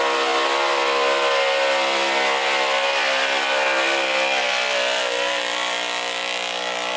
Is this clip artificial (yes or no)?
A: no